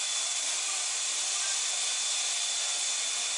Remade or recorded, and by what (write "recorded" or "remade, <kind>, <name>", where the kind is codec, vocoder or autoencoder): recorded